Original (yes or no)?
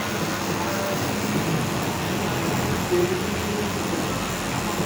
yes